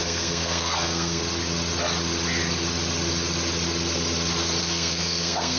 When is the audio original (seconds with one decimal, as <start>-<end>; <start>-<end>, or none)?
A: 1.2-4.6